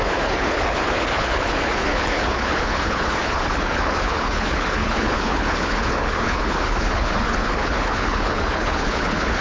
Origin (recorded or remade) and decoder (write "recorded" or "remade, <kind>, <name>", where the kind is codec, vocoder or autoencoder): remade, codec, HILCodec